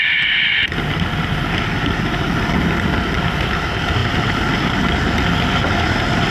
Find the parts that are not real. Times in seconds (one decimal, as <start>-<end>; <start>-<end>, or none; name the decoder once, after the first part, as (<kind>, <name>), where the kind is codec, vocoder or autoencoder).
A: none